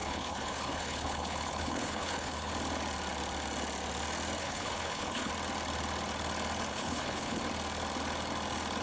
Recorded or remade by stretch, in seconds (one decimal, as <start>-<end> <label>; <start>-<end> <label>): 0.0-2.5 remade; 2.5-4.4 recorded; 4.4-5.3 remade; 5.3-6.7 recorded; 6.7-7.4 remade; 7.4-8.8 recorded